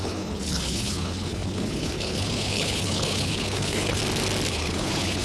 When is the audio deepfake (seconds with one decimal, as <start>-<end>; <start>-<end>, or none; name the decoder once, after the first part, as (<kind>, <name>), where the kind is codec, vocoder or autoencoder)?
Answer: 0.0-4.0 (codec, HILCodec); 4.5-5.2